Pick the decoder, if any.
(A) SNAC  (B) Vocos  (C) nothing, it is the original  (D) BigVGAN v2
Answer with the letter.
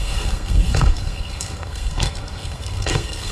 A